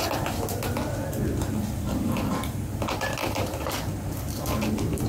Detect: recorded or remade recorded